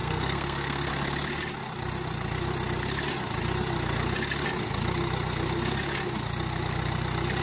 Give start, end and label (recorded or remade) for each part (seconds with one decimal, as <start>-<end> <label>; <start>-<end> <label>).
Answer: 0.0-0.9 remade; 0.9-7.4 recorded